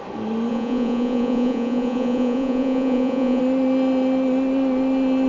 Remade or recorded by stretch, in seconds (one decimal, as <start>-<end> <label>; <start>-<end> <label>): 0.0-0.5 recorded; 0.5-3.4 remade; 3.4-5.3 recorded